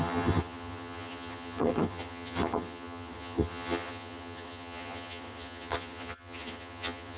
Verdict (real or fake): fake